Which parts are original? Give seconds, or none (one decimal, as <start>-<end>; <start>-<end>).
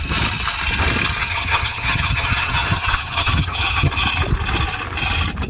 0.0-1.2; 3.9-5.5